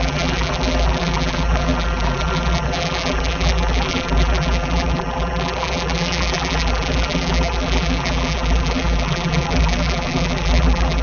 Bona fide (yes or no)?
no